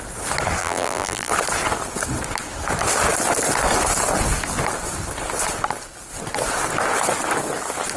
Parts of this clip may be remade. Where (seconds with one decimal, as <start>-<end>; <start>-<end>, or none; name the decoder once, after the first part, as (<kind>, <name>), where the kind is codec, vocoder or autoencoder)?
0.6-1.3 (vocoder, BigVGAN v2)